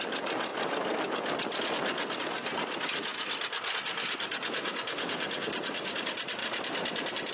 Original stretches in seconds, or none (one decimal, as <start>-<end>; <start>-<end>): 0.0-7.3